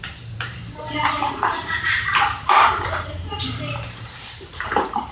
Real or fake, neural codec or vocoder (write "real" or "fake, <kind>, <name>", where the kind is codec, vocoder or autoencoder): fake, vocoder, BigVGAN v2